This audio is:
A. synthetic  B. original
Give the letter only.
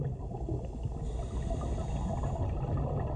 B